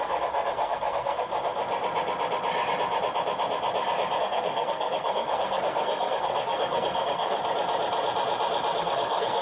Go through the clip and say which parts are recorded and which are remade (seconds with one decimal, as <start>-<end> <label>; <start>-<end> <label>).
0.0-1.3 remade; 1.3-4.2 recorded; 4.2-7.4 remade; 7.4-8.8 recorded; 8.8-9.4 remade